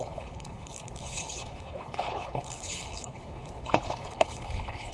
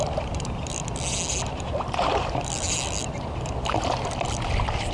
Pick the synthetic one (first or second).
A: first